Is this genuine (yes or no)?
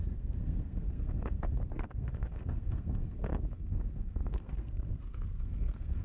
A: no